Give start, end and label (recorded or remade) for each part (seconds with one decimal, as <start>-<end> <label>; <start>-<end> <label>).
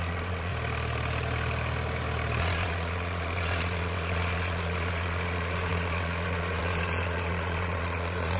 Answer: 0.0-0.5 remade; 0.5-2.4 recorded; 2.4-8.4 remade